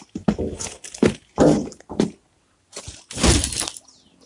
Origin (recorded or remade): recorded